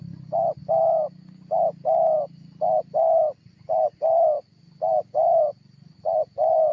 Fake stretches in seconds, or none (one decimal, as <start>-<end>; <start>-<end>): none